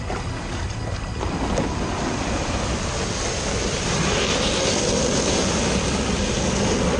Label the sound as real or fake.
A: real